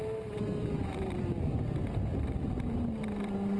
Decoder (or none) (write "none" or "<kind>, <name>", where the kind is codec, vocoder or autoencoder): vocoder, BigVGAN v2